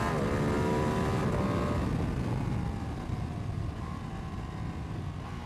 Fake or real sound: real